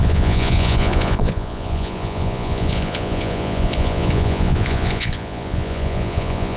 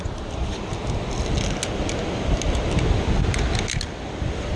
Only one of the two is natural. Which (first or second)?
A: second